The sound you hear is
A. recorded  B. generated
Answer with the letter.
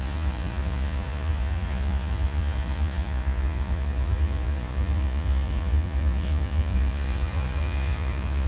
B